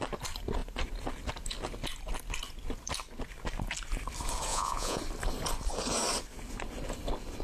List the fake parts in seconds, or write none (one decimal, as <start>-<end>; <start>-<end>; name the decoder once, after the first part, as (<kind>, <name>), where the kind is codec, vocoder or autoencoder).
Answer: 4.5-5.0 (vocoder, Vocos)